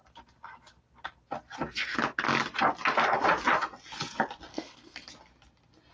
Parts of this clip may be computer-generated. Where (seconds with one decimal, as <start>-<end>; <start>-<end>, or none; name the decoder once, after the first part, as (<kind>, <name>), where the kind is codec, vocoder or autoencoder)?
4.5-5.1 (codec, SNAC)